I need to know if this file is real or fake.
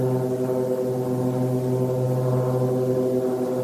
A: real